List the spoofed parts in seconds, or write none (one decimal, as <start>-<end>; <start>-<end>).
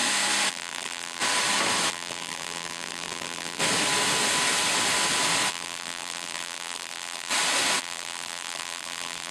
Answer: 0.5-1.2; 1.9-3.6; 5.5-7.3; 7.8-9.3